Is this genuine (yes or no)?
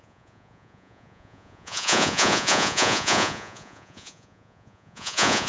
no